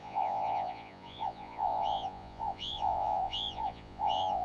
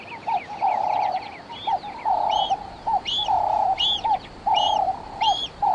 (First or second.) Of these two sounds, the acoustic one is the second